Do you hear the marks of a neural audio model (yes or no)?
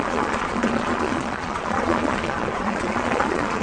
yes